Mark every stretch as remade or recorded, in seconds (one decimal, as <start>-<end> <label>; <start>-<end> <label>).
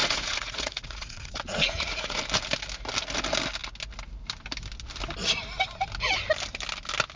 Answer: 0.0-2.2 remade; 2.2-7.2 recorded